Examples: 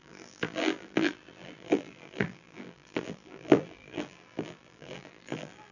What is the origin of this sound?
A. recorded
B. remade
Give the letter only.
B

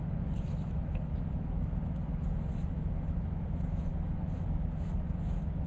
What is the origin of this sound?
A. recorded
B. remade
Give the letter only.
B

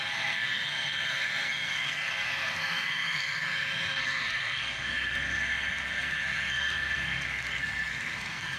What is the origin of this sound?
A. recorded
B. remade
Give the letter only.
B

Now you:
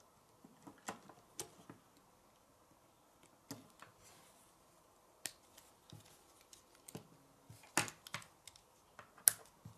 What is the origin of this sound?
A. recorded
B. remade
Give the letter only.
A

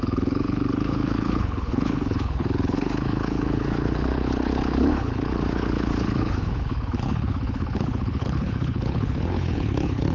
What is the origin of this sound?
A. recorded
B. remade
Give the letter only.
B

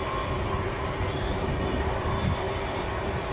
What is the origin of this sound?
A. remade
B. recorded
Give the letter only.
B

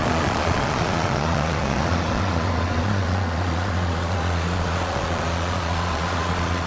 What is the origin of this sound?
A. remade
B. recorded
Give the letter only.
A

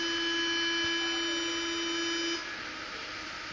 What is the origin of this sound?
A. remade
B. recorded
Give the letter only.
B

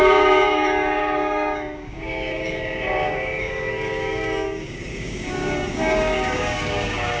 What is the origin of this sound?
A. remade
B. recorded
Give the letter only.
A